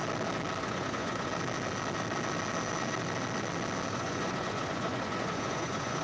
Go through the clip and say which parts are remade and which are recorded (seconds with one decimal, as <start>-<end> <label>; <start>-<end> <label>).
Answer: 0.0-0.6 recorded; 0.6-1.3 remade; 1.3-3.9 recorded; 3.9-6.0 remade